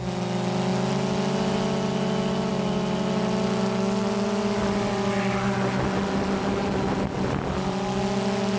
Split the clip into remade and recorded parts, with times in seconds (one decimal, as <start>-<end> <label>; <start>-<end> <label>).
0.0-8.6 recorded